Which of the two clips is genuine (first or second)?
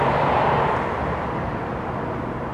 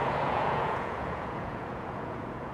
first